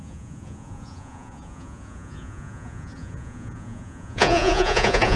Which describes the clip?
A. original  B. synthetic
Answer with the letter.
B